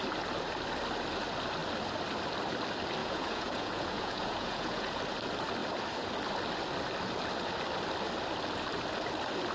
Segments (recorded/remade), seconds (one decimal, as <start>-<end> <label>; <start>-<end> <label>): 0.0-3.0 recorded; 3.0-5.0 remade; 5.0-9.5 recorded